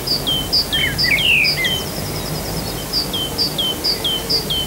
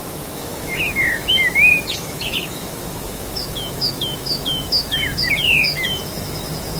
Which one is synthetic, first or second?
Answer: second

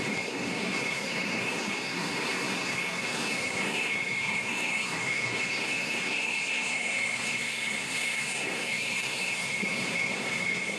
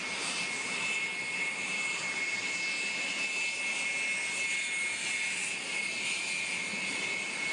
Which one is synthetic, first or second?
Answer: first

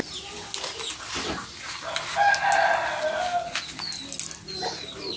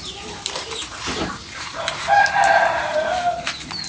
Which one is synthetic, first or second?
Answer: second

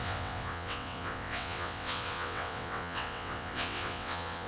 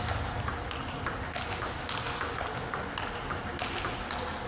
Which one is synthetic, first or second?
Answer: first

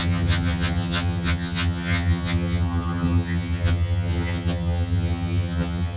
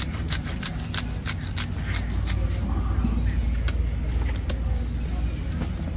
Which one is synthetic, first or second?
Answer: first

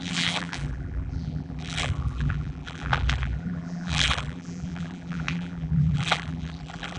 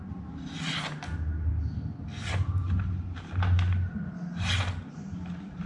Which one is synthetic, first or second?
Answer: first